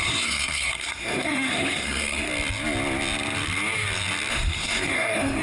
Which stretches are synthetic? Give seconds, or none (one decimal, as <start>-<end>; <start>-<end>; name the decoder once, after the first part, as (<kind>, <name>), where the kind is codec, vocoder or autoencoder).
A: 0.0-2.3 (codec, SNAC); 4.3-5.4